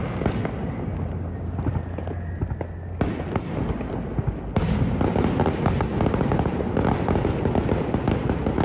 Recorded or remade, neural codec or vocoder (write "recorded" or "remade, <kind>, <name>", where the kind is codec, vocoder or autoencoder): recorded